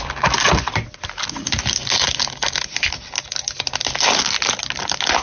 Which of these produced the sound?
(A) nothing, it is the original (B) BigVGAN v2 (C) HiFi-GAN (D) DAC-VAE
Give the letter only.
A